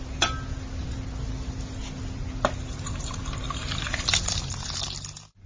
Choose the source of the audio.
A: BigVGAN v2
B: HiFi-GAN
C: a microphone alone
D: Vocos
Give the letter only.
C